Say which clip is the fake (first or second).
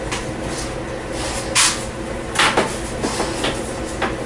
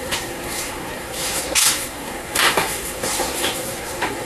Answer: second